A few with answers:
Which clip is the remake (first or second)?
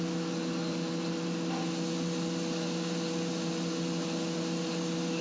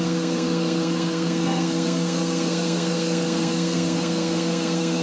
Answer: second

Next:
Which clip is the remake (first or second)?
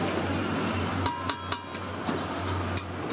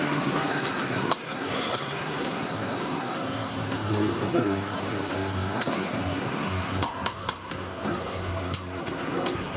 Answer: second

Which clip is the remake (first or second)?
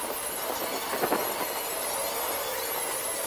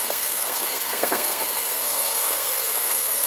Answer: second